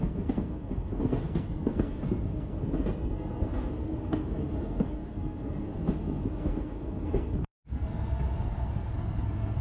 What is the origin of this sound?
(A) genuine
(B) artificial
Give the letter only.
B